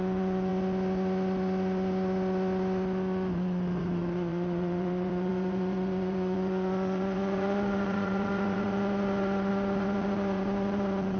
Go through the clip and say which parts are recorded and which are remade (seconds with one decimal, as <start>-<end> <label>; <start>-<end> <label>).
0.0-0.5 remade; 0.5-3.8 recorded; 3.8-11.2 remade

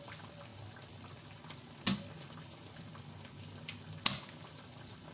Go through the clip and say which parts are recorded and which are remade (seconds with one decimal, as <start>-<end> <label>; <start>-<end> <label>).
0.0-0.5 remade; 0.5-2.4 recorded; 2.4-2.9 remade; 2.9-4.5 recorded; 4.5-5.1 remade

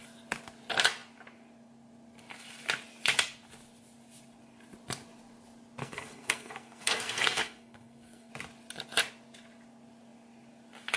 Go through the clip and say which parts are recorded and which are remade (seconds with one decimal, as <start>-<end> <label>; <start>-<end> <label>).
0.0-5.8 recorded; 5.8-8.3 remade; 8.3-11.0 recorded

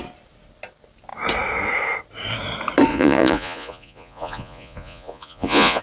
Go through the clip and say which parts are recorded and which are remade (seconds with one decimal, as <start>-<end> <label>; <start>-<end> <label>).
0.0-2.9 recorded; 2.9-5.8 remade

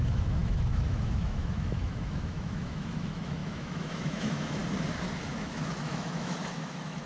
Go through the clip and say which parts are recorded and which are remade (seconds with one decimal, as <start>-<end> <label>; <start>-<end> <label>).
0.0-4.6 remade; 4.6-5.3 recorded; 5.3-7.1 remade

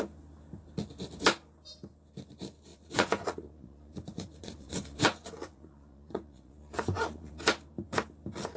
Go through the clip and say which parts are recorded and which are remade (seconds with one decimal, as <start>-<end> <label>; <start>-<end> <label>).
0.0-2.7 recorded; 2.7-7.4 remade; 7.4-8.6 recorded

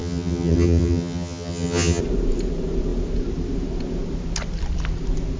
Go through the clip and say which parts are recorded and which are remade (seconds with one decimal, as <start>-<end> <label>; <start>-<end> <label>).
0.0-2.0 remade; 2.0-5.4 recorded